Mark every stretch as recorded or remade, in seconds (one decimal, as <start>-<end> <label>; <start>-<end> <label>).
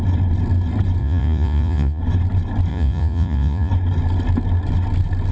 0.0-1.0 recorded; 1.0-2.0 remade; 2.0-2.7 recorded; 2.7-3.7 remade; 3.7-5.3 recorded